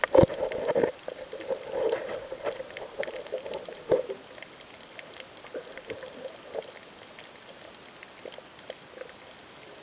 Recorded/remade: recorded